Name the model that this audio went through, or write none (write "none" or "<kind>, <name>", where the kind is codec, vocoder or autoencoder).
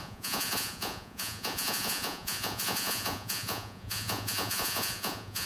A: vocoder, Vocos